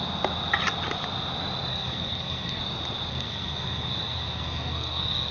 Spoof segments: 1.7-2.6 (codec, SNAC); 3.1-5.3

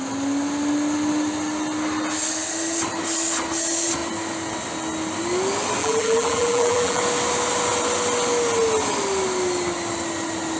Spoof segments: 5.8-7.0 (vocoder, BigVGAN v2)

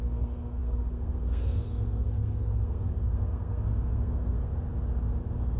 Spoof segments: 0.0-4.5 (codec, SNAC)

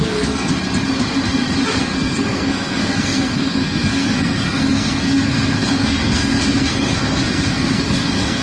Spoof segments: 0.0-0.5 (codec, SNAC); 1.8-8.4

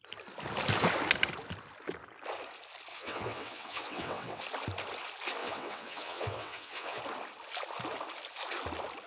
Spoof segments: 2.9-4.4 (vocoder, WaveNeXt); 5.4-7.0

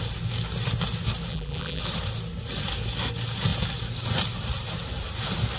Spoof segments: 1.3-1.8 (vocoder, BigVGAN v2)

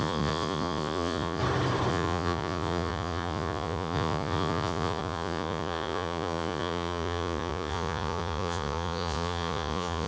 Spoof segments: 0.0-1.4 (vocoder, Vocos); 1.9-10.1